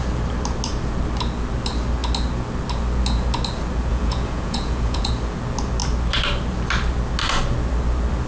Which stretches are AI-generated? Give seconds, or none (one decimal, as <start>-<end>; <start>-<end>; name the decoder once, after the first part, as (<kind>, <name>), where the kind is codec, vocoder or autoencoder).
3.9-5.1 (vocoder, Vocos)